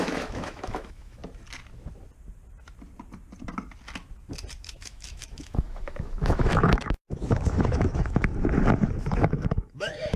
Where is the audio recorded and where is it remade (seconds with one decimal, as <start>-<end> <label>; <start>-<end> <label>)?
0.0-1.2 remade; 1.2-4.6 recorded; 4.6-8.3 remade; 8.3-9.0 recorded; 9.0-10.2 remade